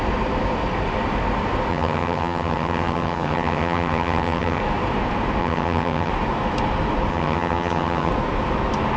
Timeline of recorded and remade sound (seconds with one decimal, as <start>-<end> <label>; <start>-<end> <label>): 0.0-1.7 recorded; 1.7-4.6 remade; 4.6-5.4 recorded; 5.4-6.1 remade; 6.1-7.1 recorded; 7.1-8.1 remade; 8.1-9.0 recorded